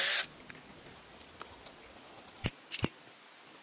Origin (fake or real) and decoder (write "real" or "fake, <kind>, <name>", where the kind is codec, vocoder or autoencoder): real